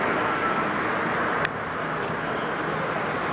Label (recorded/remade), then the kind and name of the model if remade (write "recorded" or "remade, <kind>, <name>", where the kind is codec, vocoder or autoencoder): recorded